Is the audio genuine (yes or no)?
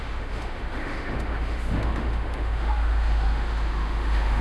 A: no